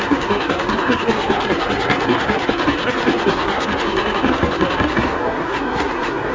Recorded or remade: remade